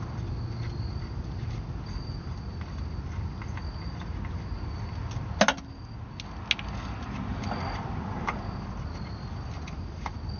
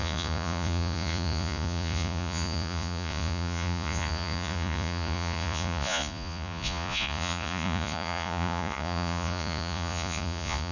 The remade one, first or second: second